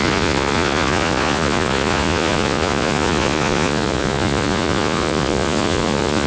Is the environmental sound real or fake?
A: fake